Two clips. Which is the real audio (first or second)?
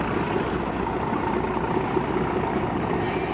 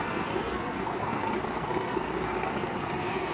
first